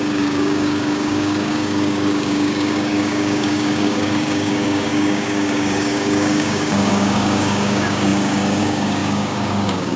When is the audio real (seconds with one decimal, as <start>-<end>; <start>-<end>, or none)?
none